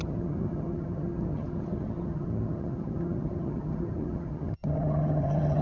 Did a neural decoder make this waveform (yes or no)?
yes